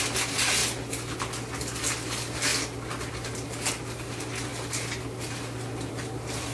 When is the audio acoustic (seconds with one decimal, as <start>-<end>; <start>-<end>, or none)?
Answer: 0.0-6.5